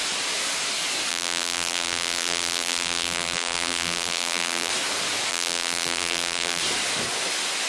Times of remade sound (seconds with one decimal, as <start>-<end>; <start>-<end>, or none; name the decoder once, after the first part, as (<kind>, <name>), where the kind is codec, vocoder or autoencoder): 1.1-4.7 (vocoder, BigVGAN v2); 5.3-6.6